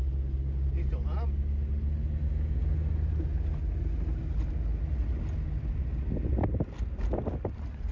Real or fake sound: real